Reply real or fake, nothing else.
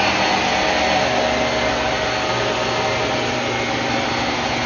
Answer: real